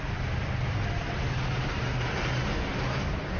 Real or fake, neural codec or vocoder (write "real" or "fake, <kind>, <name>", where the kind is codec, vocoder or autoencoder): real